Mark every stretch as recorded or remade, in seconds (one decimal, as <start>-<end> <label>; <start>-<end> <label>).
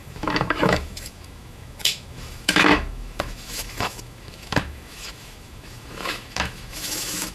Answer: 0.0-7.3 remade